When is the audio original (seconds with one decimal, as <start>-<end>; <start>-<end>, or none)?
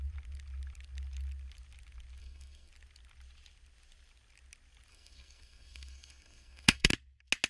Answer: 0.0-2.2; 2.7-4.9; 6.9-7.5